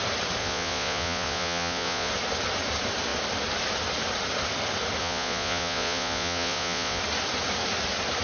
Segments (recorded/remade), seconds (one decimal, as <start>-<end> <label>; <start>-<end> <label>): 0.0-0.4 recorded; 0.4-2.1 remade; 2.1-5.0 recorded; 5.0-7.0 remade; 7.0-8.2 recorded